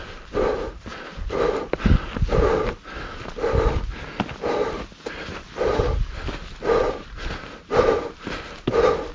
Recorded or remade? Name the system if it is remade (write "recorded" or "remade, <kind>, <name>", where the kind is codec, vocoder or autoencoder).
recorded